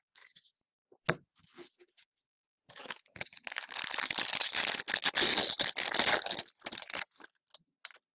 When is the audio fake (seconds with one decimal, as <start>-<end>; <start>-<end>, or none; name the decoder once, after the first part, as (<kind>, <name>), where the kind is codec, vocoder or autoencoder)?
none